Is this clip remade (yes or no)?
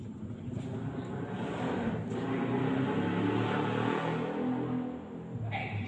no